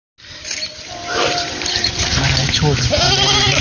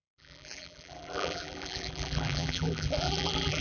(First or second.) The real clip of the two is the first